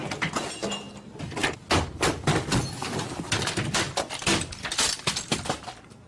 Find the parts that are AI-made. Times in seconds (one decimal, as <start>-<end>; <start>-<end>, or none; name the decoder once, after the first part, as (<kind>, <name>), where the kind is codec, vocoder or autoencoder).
none